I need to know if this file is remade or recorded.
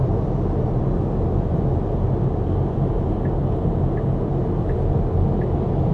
recorded